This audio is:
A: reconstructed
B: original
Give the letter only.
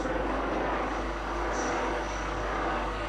A